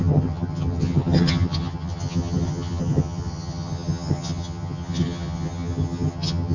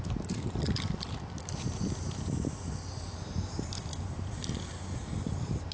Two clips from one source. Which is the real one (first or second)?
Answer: second